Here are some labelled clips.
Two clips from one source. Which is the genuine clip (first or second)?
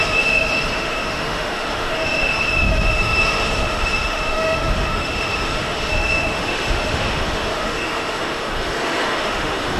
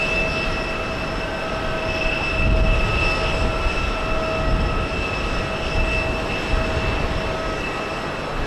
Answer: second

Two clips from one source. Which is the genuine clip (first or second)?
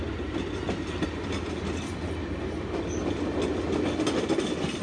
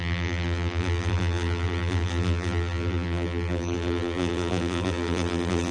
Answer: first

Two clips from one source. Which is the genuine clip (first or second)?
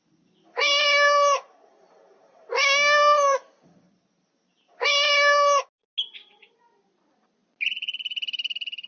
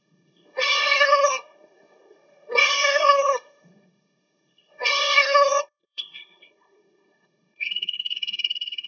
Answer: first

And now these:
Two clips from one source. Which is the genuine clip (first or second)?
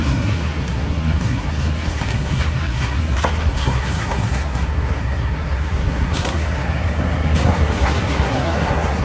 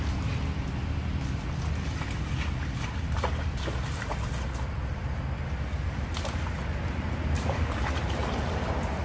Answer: second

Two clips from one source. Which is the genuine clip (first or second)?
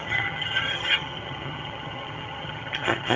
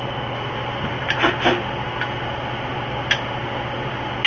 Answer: second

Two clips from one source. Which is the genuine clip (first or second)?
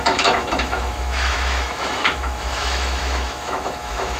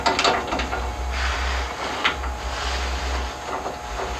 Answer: second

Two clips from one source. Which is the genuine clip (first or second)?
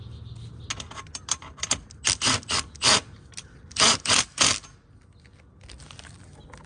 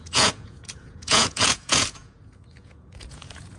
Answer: first